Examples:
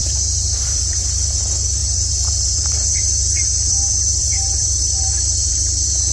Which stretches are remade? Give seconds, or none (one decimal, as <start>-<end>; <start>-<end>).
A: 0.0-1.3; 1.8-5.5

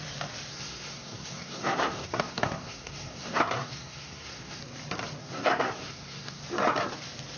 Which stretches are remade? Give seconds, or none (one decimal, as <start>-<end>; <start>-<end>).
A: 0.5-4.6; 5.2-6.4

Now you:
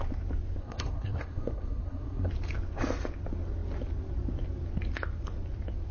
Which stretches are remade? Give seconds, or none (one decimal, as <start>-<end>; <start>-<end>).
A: 0.6-2.3